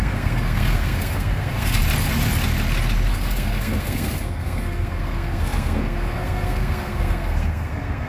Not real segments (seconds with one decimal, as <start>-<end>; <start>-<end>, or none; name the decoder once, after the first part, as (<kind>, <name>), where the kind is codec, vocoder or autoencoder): 0.0-1.8 (codec, SNAC); 3.1-8.1